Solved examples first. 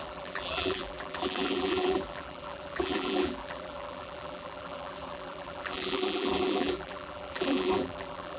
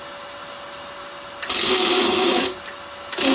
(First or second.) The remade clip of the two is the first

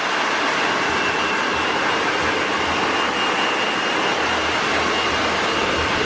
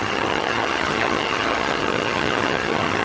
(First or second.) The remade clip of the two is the second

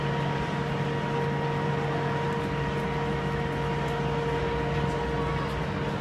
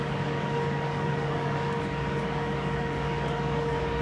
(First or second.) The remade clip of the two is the second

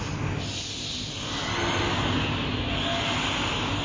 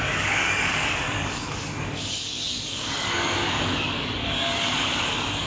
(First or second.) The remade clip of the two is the second